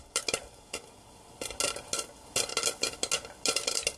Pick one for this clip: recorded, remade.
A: recorded